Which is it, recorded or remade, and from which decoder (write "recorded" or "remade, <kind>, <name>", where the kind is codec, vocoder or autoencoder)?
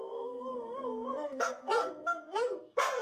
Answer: remade, codec, SNAC